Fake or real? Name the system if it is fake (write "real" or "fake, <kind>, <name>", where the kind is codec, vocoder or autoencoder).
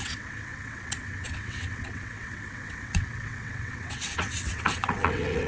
fake, vocoder, WaveNeXt